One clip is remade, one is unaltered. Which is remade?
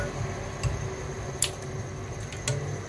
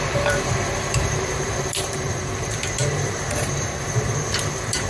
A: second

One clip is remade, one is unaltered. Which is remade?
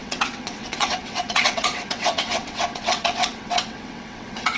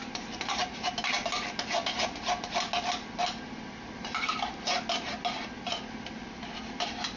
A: first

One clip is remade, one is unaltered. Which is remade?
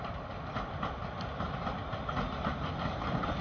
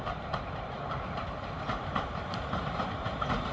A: second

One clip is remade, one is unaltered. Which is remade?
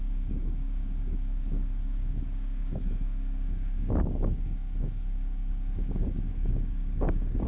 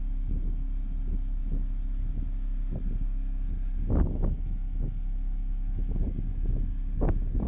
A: first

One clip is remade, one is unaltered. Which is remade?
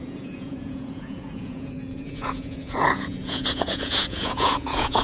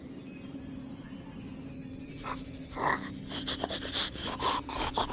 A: first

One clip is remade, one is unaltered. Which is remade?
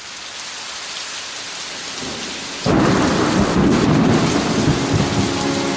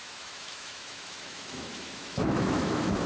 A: second